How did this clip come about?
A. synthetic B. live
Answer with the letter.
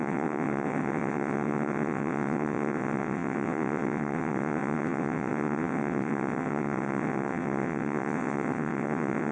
A